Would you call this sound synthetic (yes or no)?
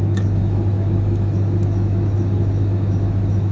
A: yes